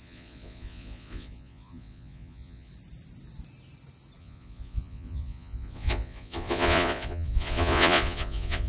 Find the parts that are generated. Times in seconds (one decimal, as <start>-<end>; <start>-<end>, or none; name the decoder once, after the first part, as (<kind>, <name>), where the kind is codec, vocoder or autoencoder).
0.0-2.7 (vocoder, Vocos); 4.2-8.7